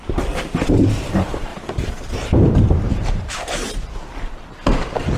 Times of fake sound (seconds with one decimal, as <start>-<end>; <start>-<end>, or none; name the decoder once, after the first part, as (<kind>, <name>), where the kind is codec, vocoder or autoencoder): 1.5-3.3 (vocoder, BigVGAN v2)